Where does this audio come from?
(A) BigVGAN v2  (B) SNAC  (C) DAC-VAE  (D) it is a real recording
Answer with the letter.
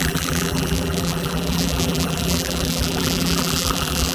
A